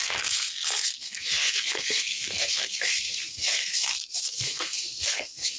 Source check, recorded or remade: remade